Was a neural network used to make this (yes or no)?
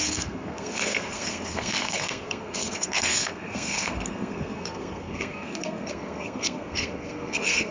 yes